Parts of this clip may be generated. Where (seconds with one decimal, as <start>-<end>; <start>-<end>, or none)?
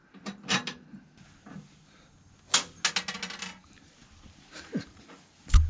none